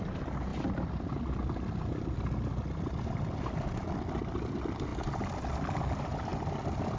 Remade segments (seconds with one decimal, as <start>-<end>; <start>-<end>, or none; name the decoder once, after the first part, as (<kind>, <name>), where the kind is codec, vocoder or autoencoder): none